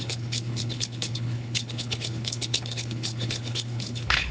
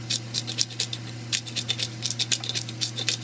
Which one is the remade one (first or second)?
first